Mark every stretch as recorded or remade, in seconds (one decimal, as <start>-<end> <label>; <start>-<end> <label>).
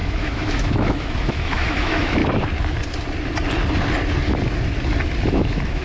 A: 0.0-2.2 remade; 2.2-5.3 recorded; 5.3-5.8 remade